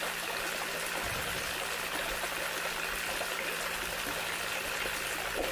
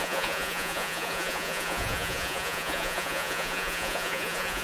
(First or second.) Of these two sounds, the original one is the first